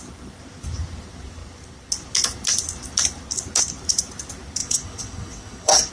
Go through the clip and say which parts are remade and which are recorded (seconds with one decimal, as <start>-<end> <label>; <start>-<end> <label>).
0.0-4.6 recorded; 4.6-5.9 remade